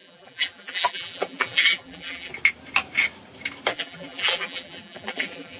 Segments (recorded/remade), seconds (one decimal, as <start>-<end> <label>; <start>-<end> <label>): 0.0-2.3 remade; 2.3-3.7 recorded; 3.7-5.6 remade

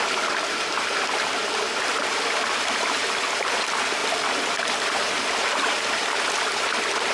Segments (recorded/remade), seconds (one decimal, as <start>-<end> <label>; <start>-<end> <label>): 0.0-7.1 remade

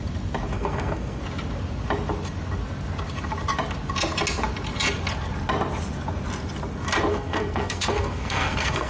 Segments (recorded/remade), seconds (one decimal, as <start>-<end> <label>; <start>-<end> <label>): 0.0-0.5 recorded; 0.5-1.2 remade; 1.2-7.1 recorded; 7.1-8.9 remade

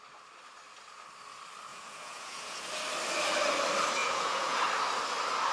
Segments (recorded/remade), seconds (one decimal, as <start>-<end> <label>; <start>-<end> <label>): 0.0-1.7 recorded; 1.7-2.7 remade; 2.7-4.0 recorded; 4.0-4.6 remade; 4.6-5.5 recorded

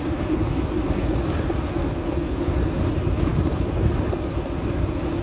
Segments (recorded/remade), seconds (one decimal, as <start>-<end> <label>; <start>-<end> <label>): 0.0-5.2 recorded

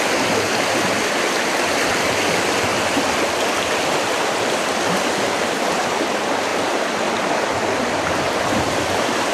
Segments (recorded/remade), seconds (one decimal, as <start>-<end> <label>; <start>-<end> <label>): 0.0-2.7 remade; 2.7-4.9 recorded; 4.9-9.3 remade

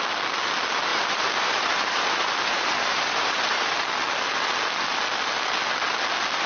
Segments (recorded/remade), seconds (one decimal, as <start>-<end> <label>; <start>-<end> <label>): 0.0-0.9 recorded; 0.9-3.8 remade; 3.8-6.5 recorded